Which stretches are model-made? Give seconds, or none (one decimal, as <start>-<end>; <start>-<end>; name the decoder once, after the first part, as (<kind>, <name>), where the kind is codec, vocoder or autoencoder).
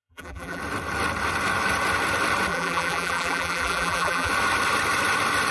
0.0-0.6 (vocoder, BigVGAN v2); 2.5-4.3